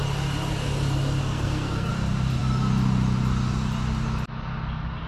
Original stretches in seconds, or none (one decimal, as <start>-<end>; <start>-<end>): 0.0-1.2; 1.9-5.1